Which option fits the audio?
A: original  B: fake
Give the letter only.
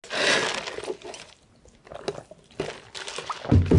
A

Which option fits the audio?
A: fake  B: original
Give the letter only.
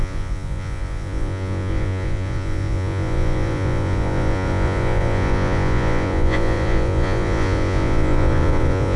A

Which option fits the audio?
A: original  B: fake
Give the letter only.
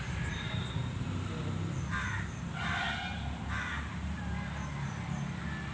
A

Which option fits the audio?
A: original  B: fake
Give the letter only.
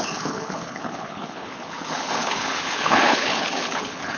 B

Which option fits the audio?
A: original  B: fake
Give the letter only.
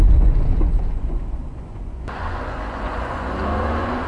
B